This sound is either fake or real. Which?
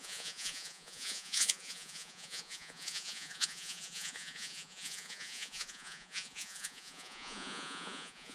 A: fake